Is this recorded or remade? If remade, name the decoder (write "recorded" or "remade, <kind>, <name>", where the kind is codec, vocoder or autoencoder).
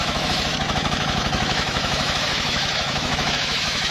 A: remade, autoencoder, DAC-VAE